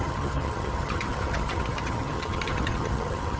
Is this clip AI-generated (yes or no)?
yes